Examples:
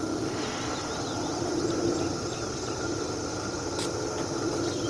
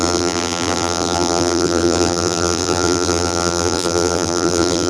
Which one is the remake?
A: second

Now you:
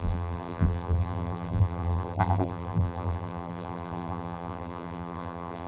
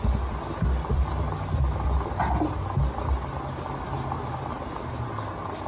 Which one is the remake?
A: first